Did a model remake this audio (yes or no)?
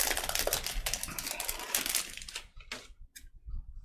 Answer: no